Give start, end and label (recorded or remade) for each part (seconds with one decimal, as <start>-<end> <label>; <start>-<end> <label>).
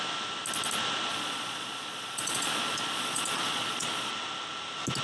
0.0-1.1 recorded; 1.1-4.1 remade; 4.1-5.0 recorded